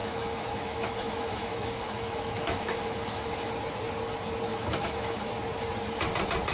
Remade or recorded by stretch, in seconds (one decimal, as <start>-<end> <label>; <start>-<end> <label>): 0.0-3.5 remade; 3.5-4.5 recorded; 4.5-5.3 remade; 5.3-6.5 recorded